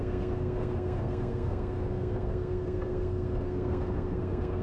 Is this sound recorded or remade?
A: remade